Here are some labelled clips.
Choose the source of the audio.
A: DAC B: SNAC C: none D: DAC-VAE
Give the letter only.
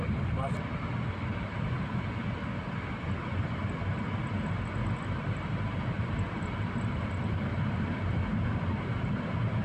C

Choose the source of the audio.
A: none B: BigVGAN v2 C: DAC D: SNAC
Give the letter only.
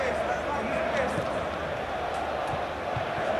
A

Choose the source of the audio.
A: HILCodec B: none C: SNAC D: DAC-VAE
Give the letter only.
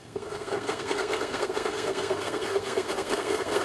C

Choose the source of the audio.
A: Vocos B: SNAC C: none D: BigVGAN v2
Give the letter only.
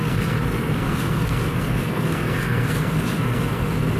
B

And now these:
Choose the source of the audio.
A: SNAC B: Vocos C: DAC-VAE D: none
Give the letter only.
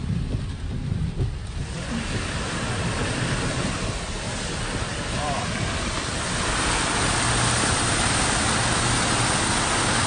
D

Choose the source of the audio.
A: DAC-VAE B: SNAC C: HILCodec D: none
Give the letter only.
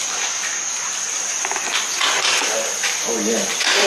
D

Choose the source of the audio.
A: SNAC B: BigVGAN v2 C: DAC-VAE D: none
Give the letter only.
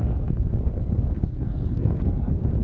A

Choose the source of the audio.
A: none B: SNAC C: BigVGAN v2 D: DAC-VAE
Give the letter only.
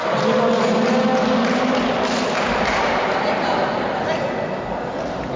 A